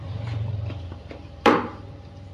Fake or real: fake